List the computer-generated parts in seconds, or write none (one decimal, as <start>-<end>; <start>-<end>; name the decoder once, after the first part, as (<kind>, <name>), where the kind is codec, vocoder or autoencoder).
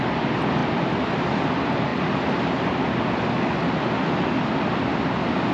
none